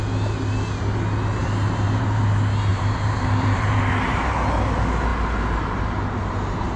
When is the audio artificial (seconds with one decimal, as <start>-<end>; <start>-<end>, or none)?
1.4-2.2; 2.7-3.9